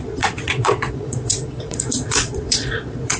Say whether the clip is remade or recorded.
remade